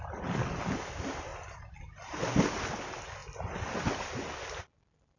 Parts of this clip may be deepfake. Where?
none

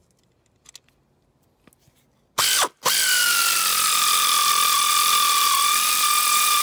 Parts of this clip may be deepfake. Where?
2.8-6.6

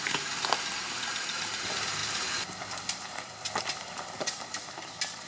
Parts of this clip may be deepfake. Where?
0.0-5.3